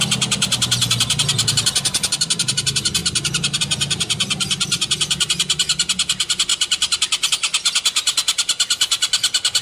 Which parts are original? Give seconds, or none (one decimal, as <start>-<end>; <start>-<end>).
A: 0.0-9.6